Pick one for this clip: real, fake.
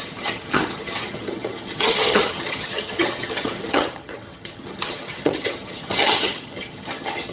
fake